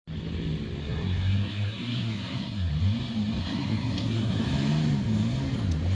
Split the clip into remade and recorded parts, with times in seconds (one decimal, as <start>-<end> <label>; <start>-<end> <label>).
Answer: 0.0-0.8 recorded; 0.8-2.7 remade; 2.7-3.4 recorded; 3.4-4.4 remade; 4.4-6.0 recorded